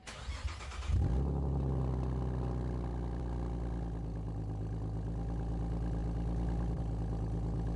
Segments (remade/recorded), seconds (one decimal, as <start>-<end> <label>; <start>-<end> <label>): 0.0-7.8 recorded